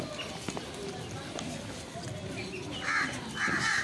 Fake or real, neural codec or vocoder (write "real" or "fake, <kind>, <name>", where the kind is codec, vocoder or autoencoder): real